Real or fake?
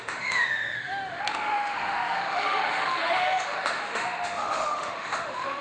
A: fake